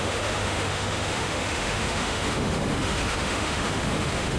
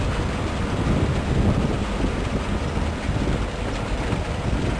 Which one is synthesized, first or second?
first